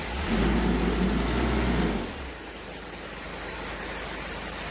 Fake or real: real